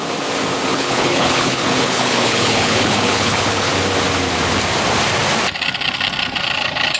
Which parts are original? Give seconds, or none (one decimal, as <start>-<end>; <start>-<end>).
0.0-0.7; 3.7-7.0